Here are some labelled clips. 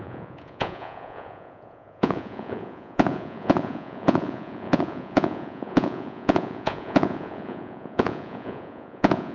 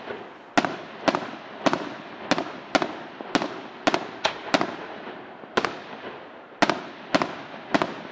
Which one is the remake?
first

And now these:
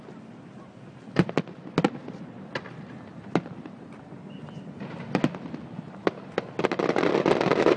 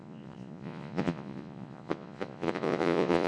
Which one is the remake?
second